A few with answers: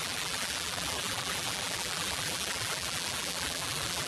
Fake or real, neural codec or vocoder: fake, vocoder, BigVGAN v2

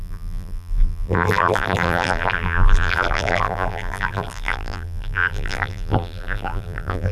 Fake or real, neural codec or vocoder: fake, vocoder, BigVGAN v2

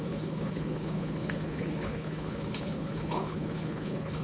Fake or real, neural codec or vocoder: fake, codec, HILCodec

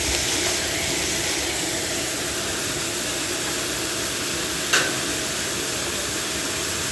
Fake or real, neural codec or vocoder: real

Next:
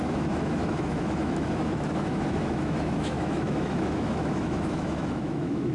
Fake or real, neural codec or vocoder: fake, autoencoder, DAC-VAE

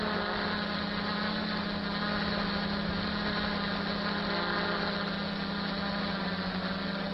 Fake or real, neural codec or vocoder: real